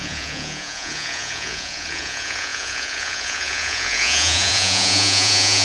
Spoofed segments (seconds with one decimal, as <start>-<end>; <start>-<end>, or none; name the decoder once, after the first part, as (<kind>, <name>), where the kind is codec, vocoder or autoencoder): 0.0-5.6 (vocoder, Vocos)